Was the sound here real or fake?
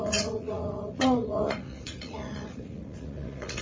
fake